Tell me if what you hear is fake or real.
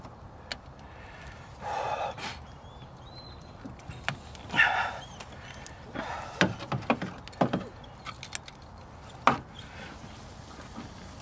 real